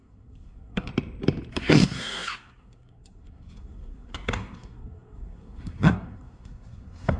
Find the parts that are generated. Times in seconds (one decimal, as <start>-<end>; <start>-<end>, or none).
0.0-0.9; 1.5-7.2